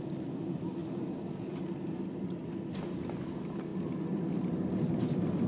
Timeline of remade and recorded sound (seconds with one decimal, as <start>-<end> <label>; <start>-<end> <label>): 0.0-5.5 recorded